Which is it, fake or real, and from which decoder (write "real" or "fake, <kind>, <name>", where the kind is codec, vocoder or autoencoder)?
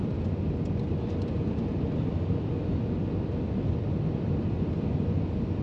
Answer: real